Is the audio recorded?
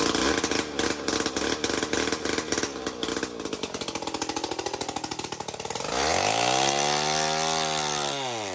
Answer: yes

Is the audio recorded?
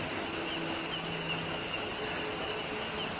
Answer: yes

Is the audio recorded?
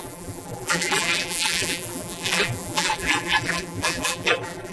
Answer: no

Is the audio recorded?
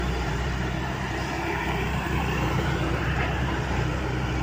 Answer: no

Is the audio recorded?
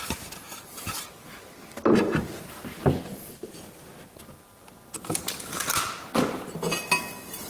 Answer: yes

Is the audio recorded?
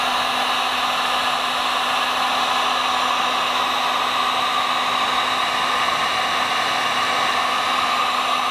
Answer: yes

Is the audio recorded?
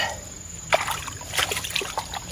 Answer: yes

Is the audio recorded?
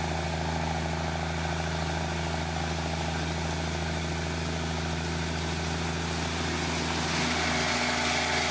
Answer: yes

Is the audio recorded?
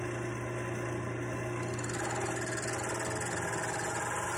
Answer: yes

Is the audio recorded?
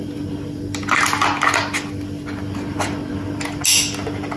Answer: yes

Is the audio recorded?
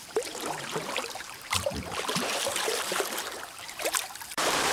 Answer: no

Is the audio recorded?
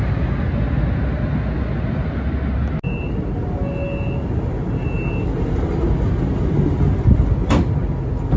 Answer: yes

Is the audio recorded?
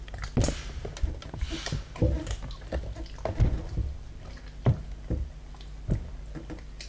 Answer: yes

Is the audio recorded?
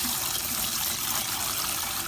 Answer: yes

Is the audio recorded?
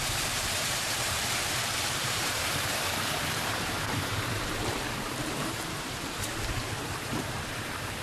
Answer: no